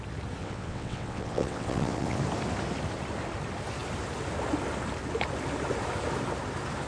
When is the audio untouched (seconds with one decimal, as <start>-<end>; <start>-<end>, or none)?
0.0-0.4; 2.2-6.9